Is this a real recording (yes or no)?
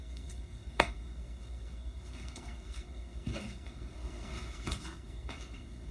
no